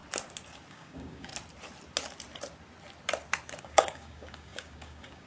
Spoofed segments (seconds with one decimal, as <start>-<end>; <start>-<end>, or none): 0.7-1.3; 3.6-5.3

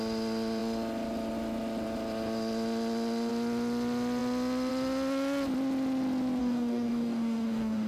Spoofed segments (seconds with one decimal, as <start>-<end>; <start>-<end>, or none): 6.4-7.9

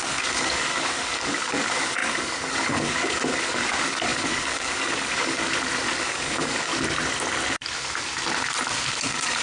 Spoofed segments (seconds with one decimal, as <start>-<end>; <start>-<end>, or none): 0.0-5.4; 6.0-6.7; 9.0-9.4

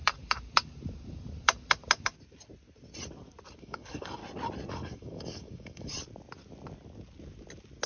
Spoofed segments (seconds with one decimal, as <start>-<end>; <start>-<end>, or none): 3.6-4.2; 4.7-5.9

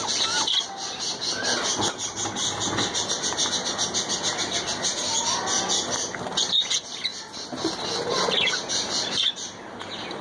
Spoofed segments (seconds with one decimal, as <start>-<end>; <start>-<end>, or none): none

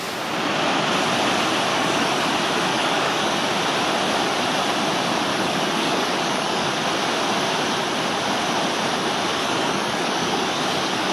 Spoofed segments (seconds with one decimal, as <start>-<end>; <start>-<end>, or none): 1.7-2.3; 2.7-3.5; 5.3-6.7; 9.3-11.1

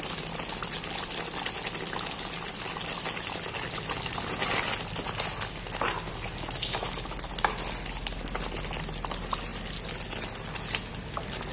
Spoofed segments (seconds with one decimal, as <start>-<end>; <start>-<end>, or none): none

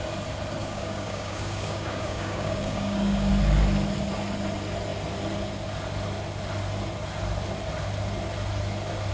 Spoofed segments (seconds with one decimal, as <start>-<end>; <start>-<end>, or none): 0.6-3.3